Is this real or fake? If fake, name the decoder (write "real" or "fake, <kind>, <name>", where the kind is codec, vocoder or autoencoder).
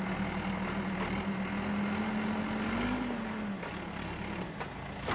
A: real